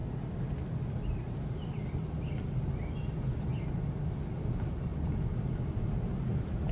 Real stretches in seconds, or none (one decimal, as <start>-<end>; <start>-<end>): 0.0-6.7